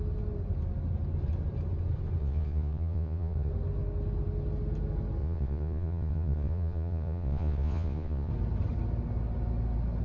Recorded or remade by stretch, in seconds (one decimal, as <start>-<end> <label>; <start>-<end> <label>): 0.0-2.2 recorded; 2.2-3.5 remade; 3.5-5.2 recorded; 5.2-8.3 remade; 8.3-10.0 recorded